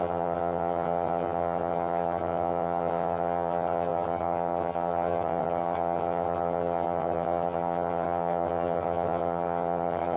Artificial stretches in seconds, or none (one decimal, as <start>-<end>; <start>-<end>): 0.0-10.2